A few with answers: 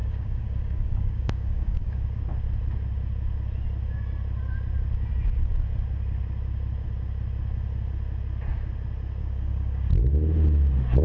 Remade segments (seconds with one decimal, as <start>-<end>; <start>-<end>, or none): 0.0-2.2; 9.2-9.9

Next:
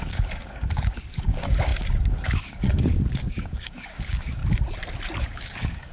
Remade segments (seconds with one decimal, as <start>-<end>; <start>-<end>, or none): 0.0-4.4; 5.2-5.9

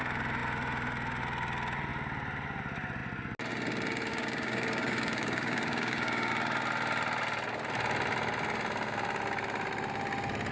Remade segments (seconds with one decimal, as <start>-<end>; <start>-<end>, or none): 4.1-6.3

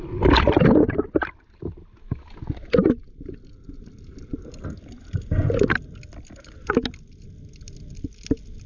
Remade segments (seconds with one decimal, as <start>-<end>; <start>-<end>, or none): none